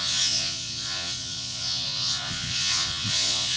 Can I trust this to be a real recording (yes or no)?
no